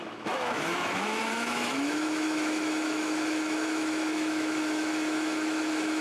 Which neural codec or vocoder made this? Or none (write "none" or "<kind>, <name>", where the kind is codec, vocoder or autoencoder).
autoencoder, DAC-VAE